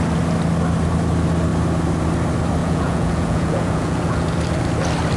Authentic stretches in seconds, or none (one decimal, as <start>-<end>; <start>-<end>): 0.0-2.6; 4.3-5.2